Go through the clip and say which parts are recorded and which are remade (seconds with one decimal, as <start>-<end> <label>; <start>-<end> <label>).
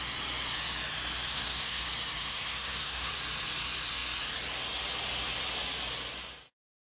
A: 0.0-1.3 recorded; 1.3-1.8 remade; 1.8-2.2 recorded; 2.2-3.1 remade; 3.1-6.9 recorded